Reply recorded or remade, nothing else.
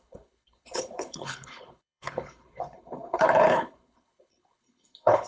remade